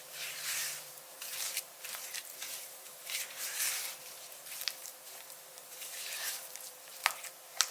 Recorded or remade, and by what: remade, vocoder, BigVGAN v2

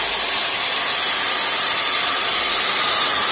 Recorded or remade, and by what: recorded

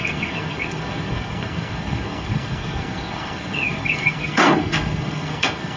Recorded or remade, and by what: remade, codec, SNAC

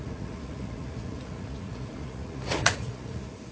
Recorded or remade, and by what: remade, vocoder, Vocos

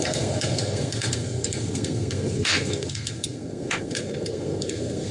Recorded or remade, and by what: remade, codec, SNAC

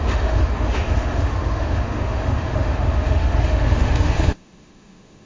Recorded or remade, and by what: remade, autoencoder, DAC-VAE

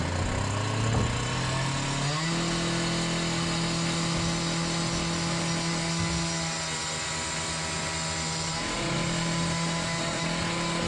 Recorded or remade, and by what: recorded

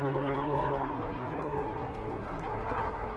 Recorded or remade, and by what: remade, codec, SNAC